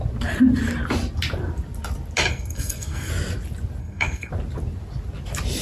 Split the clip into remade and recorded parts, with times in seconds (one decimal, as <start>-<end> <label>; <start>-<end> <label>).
0.0-2.3 recorded; 2.3-3.1 remade; 3.1-3.8 recorded; 3.8-4.3 remade; 4.3-5.6 recorded